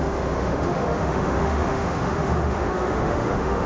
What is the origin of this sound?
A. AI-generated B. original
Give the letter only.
A